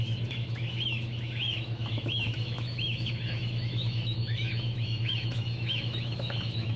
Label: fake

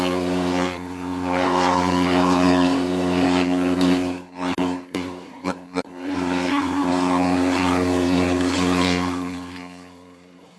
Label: fake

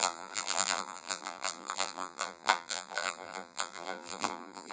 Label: fake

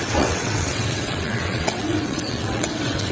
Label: fake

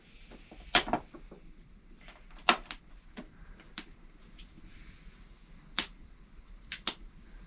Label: fake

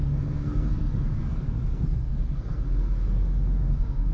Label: fake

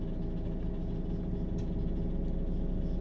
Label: real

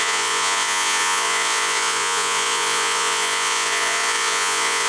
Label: fake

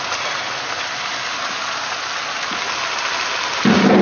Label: real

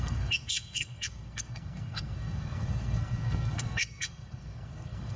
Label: fake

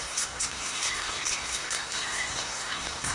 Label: fake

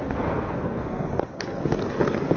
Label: fake